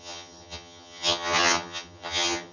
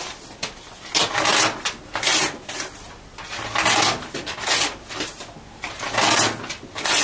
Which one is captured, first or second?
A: second